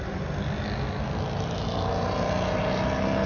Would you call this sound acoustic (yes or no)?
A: yes